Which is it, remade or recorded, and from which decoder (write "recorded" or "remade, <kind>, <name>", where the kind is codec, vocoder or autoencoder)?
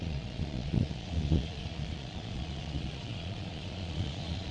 remade, vocoder, Vocos